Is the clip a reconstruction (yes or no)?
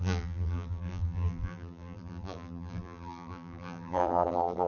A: yes